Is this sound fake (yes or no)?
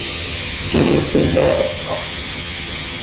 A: yes